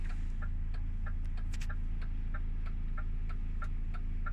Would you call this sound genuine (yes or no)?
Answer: yes